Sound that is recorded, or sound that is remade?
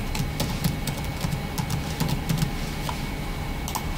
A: recorded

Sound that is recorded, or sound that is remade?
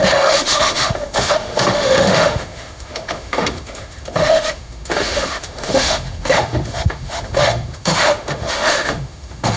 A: remade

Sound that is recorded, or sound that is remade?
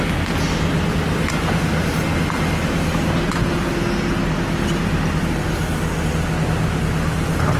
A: recorded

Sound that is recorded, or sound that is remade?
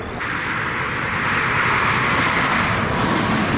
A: recorded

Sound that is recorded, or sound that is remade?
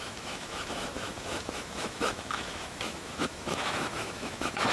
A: remade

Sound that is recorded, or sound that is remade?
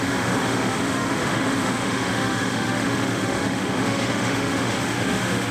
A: remade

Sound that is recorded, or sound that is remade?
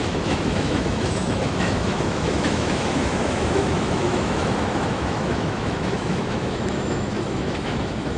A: remade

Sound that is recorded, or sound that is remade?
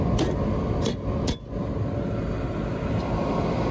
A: recorded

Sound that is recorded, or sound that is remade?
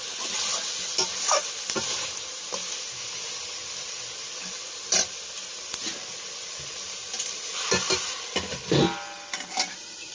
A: recorded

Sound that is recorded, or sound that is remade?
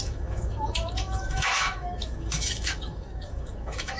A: remade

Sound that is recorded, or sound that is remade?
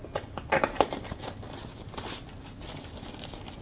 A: recorded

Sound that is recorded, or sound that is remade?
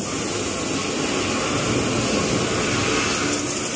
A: recorded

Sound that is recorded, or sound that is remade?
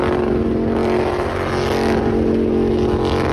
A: recorded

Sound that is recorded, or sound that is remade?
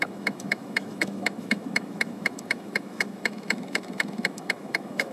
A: remade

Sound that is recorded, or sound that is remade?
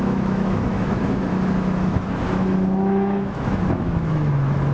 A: remade